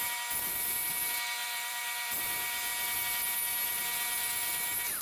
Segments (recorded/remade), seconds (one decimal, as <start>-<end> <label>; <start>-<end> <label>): 0.0-1.4 recorded; 1.4-2.2 remade; 2.2-5.0 recorded